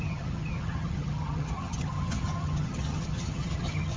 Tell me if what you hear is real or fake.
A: fake